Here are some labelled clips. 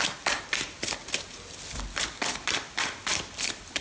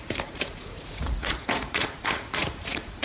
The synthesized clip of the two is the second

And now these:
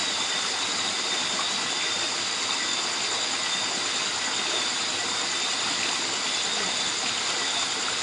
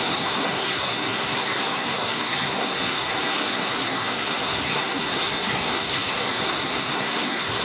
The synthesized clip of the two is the second